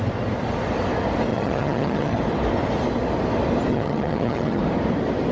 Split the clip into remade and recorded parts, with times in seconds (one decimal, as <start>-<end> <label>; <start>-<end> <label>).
0.0-1.3 recorded; 1.3-2.2 remade; 2.2-3.7 recorded; 3.7-4.6 remade; 4.6-5.3 recorded